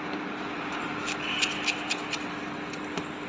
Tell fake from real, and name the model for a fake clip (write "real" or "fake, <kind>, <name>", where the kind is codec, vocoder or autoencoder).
real